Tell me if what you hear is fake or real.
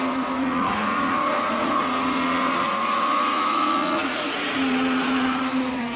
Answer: fake